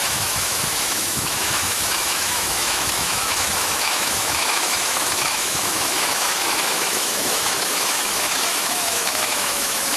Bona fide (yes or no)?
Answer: no